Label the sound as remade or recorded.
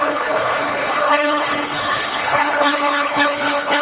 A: remade